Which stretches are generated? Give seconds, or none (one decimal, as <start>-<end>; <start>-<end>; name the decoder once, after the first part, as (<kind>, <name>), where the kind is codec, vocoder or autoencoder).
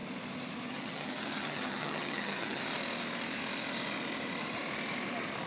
0.7-2.6 (vocoder, HiFi-GAN)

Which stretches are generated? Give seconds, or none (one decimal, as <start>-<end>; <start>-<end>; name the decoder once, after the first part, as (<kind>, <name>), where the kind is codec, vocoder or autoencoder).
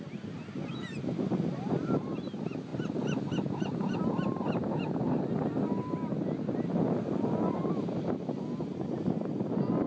7.6-8.2 (vocoder, BigVGAN v2)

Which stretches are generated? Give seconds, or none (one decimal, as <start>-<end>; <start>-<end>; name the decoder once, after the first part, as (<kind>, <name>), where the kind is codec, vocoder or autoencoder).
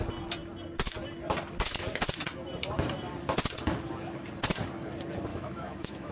5.3-6.1 (autoencoder, DAC-VAE)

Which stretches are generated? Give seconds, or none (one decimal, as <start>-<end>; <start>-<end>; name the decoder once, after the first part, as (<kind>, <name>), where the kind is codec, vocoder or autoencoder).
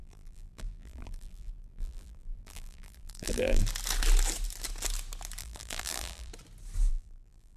0.0-3.6 (vocoder, BigVGAN v2); 5.4-6.3; 6.9-7.6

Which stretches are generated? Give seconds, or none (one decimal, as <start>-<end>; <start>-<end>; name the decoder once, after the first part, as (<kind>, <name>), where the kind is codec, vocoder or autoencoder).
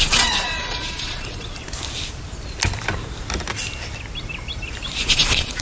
0.0-1.6 (vocoder, Vocos); 5.0-5.6